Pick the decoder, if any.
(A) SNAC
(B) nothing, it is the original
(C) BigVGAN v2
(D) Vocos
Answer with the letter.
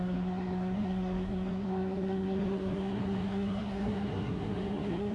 A